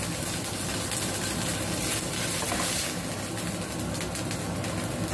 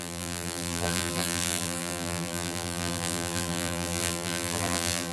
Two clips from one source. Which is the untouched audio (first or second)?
first